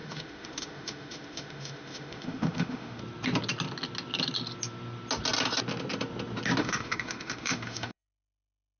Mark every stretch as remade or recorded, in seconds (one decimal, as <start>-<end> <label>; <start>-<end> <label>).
0.0-3.0 remade; 3.0-6.6 recorded; 6.6-8.8 remade